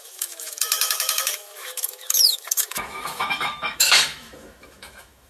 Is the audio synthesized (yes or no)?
yes